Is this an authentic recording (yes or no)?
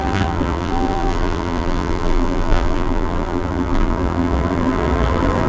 no